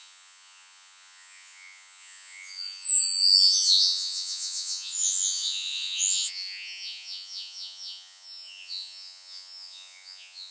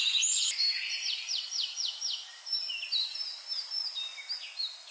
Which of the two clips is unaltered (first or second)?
second